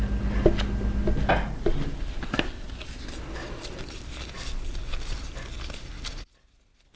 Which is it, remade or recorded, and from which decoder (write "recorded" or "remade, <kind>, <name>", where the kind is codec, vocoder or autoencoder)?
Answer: recorded